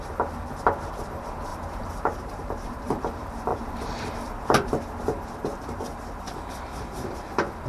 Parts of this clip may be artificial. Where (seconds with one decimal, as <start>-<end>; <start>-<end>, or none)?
1.5-3.0; 3.5-4.8